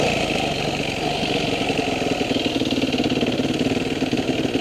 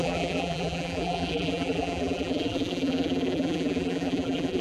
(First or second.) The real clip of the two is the first